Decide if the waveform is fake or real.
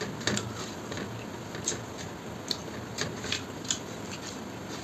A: real